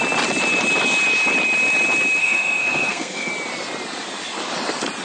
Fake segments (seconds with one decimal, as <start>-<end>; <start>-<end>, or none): 2.2-3.3